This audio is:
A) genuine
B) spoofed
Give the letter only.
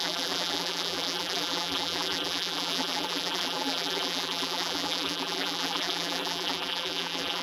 B